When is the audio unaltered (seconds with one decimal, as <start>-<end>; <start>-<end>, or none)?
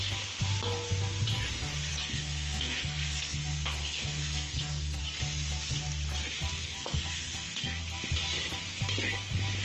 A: 0.0-1.9; 5.0-6.6; 7.8-9.6